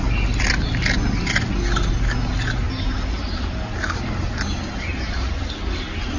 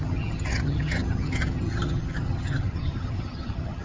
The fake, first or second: second